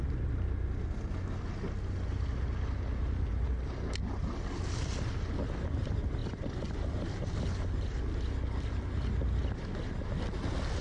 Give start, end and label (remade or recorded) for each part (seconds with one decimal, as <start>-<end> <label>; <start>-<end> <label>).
0.0-10.8 recorded